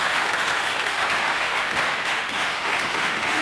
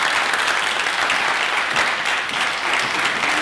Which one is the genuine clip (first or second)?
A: second